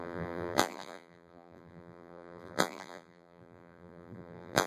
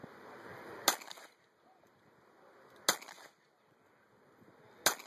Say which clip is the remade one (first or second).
first